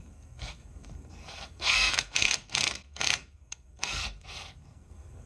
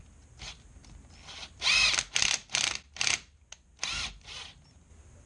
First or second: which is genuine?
second